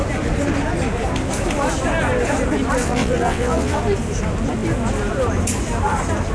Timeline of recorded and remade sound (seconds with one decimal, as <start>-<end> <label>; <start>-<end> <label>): 0.0-2.8 recorded; 2.8-3.8 remade; 3.8-6.3 recorded